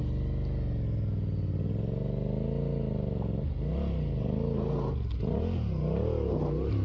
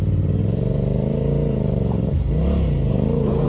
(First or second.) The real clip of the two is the first